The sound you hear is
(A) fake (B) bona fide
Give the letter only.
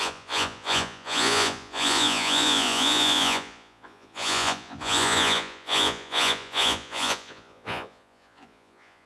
A